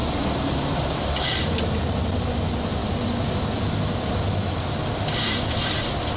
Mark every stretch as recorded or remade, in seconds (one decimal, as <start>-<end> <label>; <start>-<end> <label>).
0.0-6.2 recorded